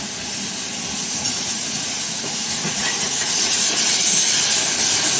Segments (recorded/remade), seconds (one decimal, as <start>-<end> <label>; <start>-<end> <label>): 0.0-1.0 recorded; 1.0-3.6 remade; 3.6-5.2 recorded

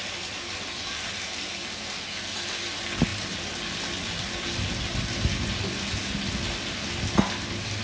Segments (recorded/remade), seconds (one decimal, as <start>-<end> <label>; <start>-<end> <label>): 0.0-7.8 recorded